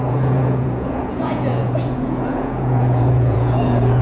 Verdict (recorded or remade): remade